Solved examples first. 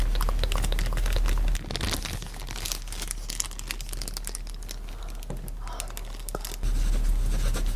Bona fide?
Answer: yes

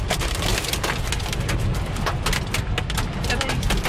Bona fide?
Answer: yes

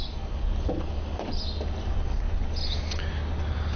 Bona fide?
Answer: yes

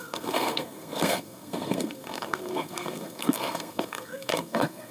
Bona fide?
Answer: no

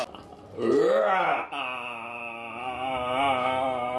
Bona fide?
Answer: yes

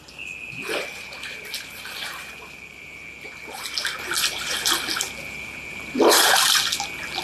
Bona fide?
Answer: no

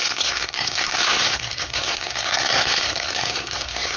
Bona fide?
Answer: no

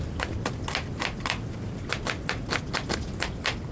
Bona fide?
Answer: yes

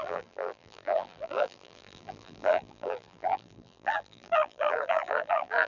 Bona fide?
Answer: no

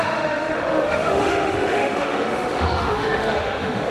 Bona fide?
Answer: no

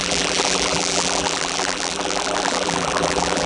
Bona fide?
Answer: no